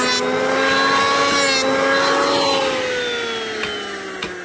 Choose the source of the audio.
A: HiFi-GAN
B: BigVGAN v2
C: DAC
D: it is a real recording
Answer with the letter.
D